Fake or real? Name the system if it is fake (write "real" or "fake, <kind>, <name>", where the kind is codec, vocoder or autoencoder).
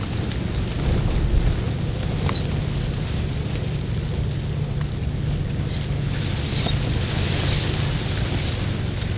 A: real